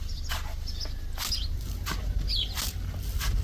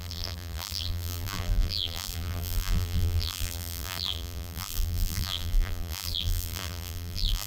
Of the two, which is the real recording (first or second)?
first